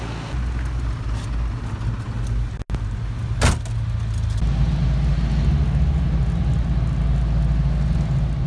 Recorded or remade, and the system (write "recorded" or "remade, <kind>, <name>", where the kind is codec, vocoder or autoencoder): recorded